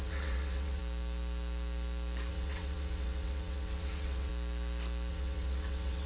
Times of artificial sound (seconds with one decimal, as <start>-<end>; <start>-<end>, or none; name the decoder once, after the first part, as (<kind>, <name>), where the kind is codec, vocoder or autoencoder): 0.0-0.8 (vocoder, WaveNeXt); 2.3-4.3; 5.1-6.1